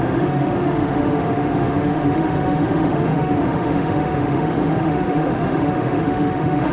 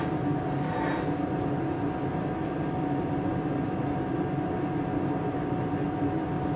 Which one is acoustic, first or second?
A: second